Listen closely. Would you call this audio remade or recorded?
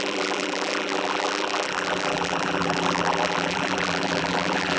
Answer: remade